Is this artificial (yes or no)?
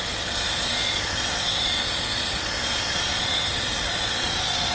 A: yes